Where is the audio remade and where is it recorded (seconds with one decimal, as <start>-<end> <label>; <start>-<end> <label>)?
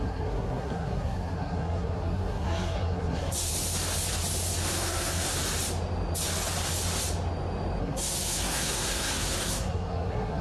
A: 0.0-3.5 remade; 3.5-4.7 recorded; 4.7-5.4 remade; 5.4-7.8 recorded; 7.8-10.4 remade